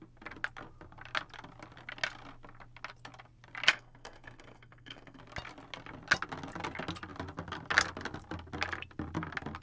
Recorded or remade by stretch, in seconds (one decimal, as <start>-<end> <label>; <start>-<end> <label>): 0.0-3.7 recorded; 3.7-5.2 remade; 5.2-9.6 recorded